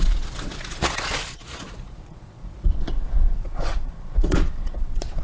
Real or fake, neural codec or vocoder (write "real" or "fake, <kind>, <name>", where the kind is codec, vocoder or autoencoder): fake, vocoder, Vocos